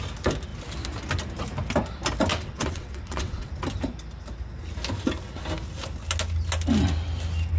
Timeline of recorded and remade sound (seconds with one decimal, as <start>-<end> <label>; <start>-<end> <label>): 0.0-2.3 recorded; 2.3-3.5 remade; 3.5-7.6 recorded